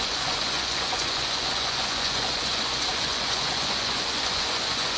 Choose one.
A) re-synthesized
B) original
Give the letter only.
A